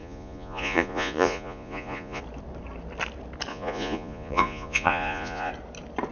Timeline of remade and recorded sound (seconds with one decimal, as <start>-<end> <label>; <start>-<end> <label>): 0.0-2.2 remade; 2.2-3.5 recorded; 3.5-5.5 remade; 5.5-6.1 recorded